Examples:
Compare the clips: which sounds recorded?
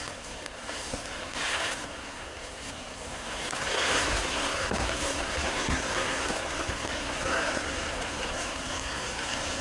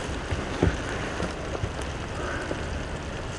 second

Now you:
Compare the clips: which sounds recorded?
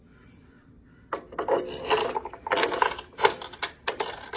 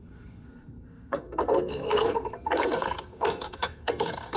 first